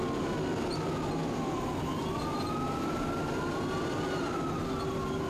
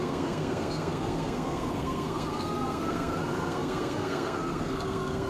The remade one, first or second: second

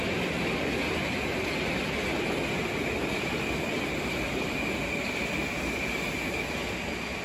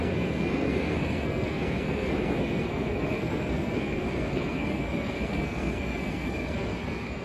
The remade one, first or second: second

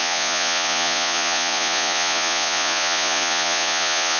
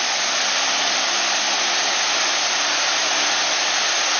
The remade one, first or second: first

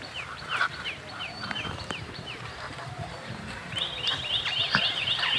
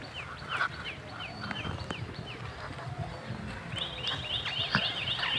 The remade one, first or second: first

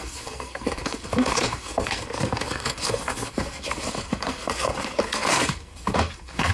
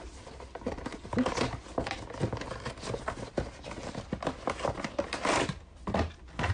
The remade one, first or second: first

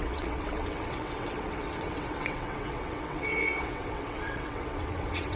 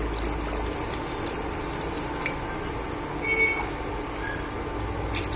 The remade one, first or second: first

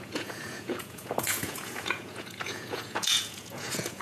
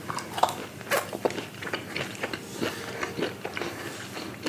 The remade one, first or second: first